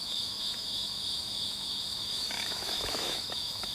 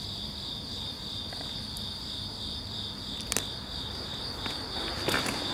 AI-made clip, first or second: first